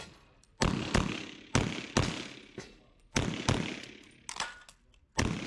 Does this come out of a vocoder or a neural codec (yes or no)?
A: no